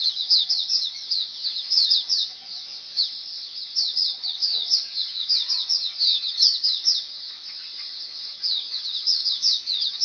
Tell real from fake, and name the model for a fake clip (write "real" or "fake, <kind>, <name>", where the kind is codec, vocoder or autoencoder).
fake, vocoder, WaveNeXt